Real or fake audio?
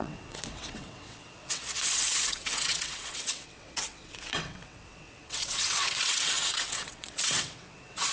fake